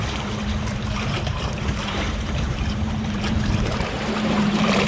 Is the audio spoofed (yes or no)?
yes